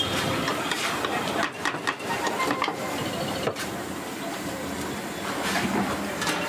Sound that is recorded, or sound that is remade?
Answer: remade